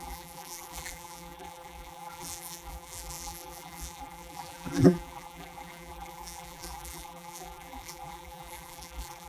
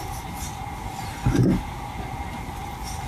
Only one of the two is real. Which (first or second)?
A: second